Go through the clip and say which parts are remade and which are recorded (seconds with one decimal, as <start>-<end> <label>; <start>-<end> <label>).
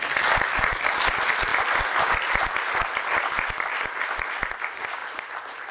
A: 0.0-5.7 recorded